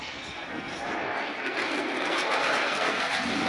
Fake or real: fake